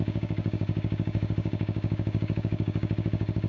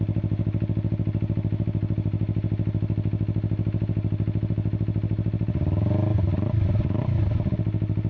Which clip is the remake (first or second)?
first